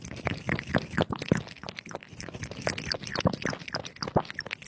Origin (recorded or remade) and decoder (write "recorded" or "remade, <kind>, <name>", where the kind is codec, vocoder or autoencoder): recorded